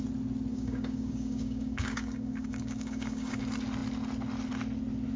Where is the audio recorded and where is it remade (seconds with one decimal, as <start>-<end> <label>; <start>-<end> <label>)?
0.0-0.5 recorded; 0.5-3.4 remade; 3.4-5.2 recorded